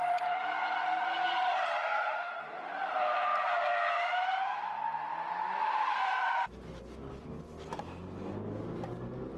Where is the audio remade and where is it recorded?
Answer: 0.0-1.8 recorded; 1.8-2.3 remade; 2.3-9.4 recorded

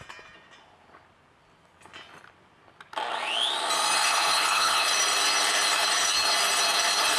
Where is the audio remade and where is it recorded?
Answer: 0.0-4.0 recorded; 4.0-4.9 remade; 4.9-7.2 recorded

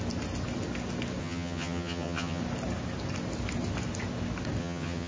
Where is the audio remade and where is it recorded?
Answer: 0.0-1.2 recorded; 1.2-2.4 remade; 2.4-4.6 recorded; 4.6-5.1 remade

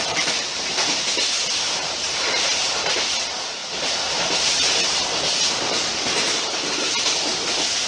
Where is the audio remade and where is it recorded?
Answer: 0.0-3.6 remade; 3.6-4.5 recorded; 4.5-7.9 remade

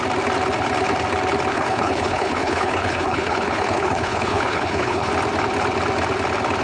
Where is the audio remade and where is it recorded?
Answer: 0.0-1.5 recorded; 1.5-5.1 remade; 5.1-6.6 recorded

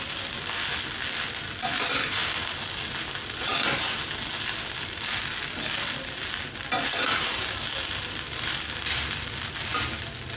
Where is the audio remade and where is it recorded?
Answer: 0.0-10.4 recorded

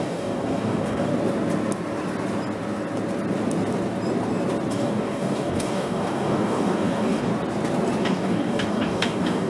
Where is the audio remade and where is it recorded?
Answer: 0.0-1.1 remade; 1.1-4.7 recorded; 4.7-7.3 remade; 7.3-8.0 recorded; 8.0-9.5 remade

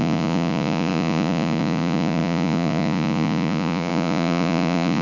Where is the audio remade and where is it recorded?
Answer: 0.0-5.0 remade